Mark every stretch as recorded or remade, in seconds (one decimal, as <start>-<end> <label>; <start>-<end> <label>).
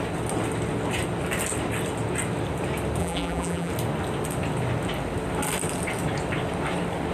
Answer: 0.0-3.0 recorded; 3.0-3.7 remade; 3.7-7.1 recorded